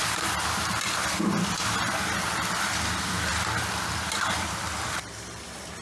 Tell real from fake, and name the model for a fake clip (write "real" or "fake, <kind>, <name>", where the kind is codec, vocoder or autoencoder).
fake, vocoder, BigVGAN v2